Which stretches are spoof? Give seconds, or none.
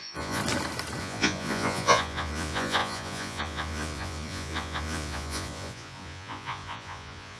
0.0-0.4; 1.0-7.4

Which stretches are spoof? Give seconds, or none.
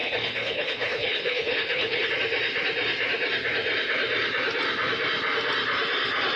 0.0-2.1